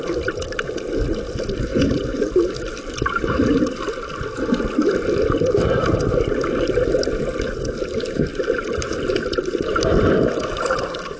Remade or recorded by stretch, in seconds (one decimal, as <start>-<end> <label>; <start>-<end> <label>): 0.0-8.3 recorded; 8.3-11.2 remade